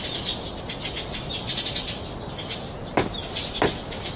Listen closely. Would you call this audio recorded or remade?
recorded